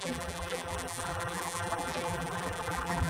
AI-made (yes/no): yes